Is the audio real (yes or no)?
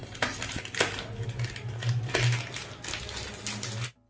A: yes